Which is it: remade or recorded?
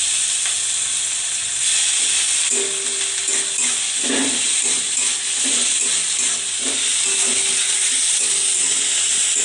recorded